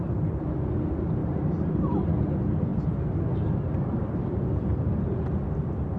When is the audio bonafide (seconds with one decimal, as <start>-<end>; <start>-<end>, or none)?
0.0-6.0